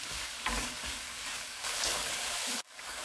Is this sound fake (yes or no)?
yes